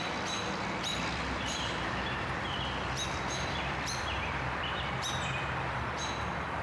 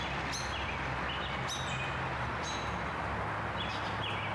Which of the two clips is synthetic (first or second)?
first